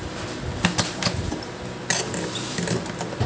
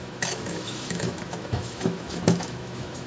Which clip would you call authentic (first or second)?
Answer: first